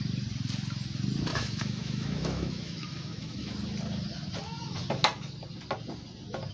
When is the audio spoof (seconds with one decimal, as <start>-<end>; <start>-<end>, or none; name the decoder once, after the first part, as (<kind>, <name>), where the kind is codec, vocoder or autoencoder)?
1.3-3.6 (autoencoder, DAC-VAE)